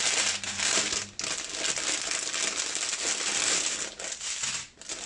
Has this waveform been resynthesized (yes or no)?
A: no